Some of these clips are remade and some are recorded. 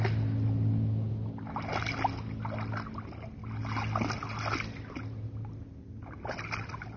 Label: recorded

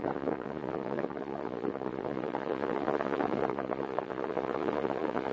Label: remade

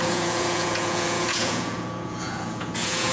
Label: remade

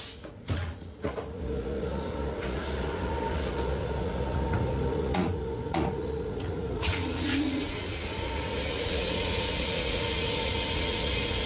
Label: remade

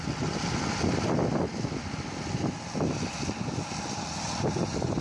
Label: recorded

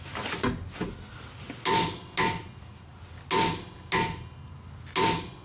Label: recorded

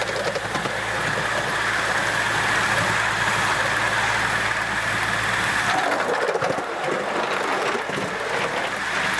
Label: recorded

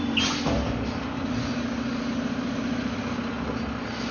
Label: recorded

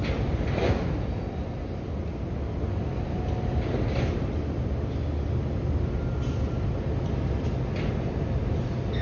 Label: recorded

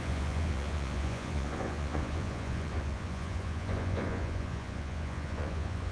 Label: remade